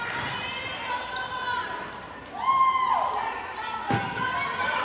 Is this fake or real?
real